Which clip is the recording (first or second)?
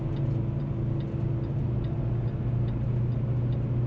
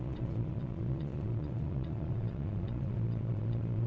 first